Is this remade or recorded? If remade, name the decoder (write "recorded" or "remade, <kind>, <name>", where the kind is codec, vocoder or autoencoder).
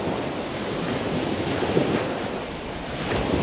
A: recorded